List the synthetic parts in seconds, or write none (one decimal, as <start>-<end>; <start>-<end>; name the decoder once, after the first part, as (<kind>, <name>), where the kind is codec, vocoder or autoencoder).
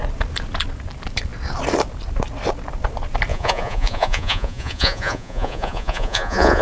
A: 3.3-6.6 (vocoder, Vocos)